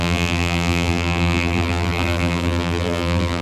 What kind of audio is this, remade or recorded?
remade